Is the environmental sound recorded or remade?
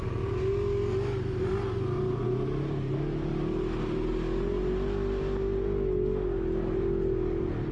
recorded